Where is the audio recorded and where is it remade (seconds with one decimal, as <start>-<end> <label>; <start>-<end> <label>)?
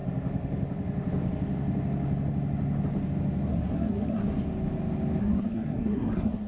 0.0-3.5 recorded; 3.5-4.2 remade; 4.2-5.2 recorded; 5.2-6.5 remade